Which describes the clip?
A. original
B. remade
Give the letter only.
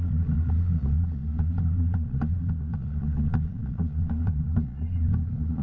B